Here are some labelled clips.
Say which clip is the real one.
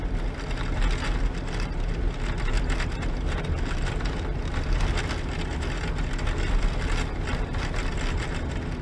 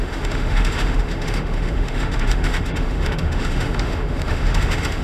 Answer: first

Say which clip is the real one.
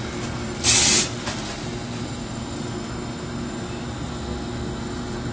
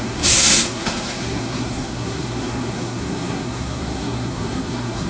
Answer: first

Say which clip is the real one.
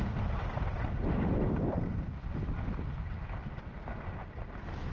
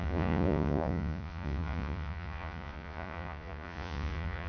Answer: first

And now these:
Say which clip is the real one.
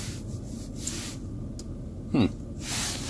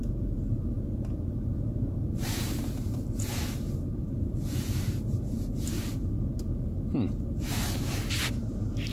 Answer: first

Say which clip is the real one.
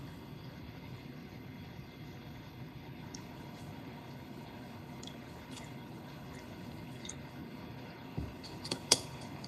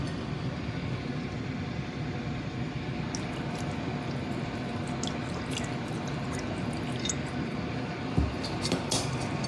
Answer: second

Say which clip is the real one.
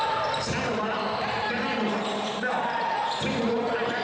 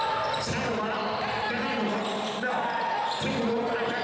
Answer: second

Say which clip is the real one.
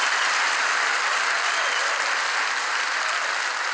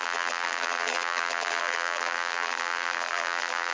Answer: first